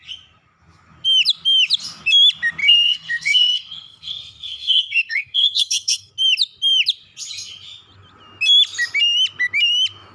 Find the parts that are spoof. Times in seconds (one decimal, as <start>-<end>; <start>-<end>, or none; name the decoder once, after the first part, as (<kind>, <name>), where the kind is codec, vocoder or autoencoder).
2.6-6.1 (codec, SNAC)